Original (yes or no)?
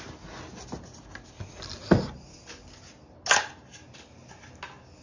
yes